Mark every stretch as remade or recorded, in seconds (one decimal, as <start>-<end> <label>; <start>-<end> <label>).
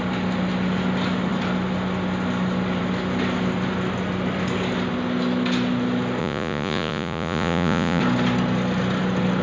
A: 0.0-6.2 recorded; 6.2-8.0 remade; 8.0-9.4 recorded